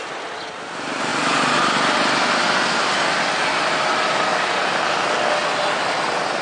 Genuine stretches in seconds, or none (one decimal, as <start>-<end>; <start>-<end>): 0.0-6.4